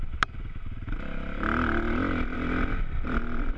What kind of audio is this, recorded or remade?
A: remade